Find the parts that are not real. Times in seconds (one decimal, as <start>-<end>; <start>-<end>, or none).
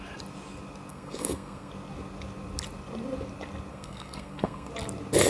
0.9-1.7; 3.7-4.7